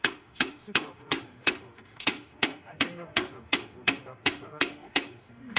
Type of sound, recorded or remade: remade